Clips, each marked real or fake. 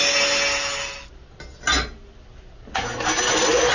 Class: real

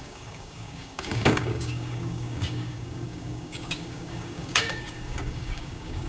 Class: fake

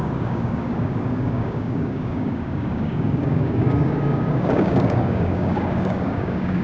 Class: fake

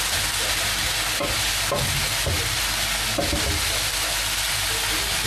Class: real